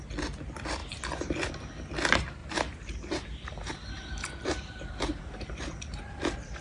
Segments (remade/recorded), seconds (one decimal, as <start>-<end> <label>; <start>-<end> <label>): 0.0-2.4 recorded; 2.4-6.6 remade

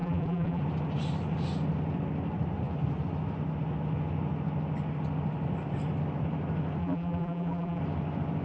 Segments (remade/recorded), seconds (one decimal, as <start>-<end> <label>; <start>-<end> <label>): 0.0-0.6 remade; 0.6-6.8 recorded; 6.8-7.8 remade; 7.8-8.4 recorded

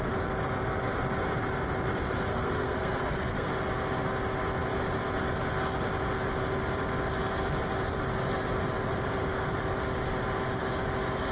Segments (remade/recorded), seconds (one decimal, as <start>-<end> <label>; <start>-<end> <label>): 0.0-2.3 recorded; 2.3-3.5 remade; 3.5-11.3 recorded

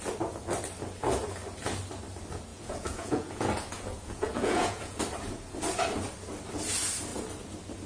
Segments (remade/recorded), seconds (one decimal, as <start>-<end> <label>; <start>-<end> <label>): 0.0-2.5 recorded; 2.5-5.0 remade; 5.0-7.9 recorded